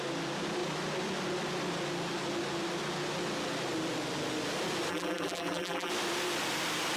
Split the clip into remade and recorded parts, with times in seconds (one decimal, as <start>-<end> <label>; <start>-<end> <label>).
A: 0.0-4.9 recorded; 4.9-5.9 remade; 5.9-7.0 recorded